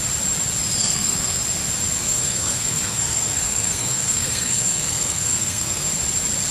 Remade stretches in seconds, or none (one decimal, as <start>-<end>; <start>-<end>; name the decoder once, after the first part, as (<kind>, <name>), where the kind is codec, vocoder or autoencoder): 0.8-1.4 (codec, SNAC); 2.0-5.9